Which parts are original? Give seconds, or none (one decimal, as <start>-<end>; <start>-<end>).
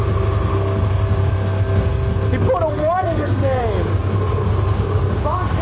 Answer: 0.0-2.7; 3.6-5.6